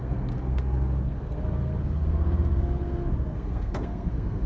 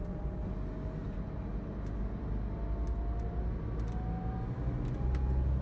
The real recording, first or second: second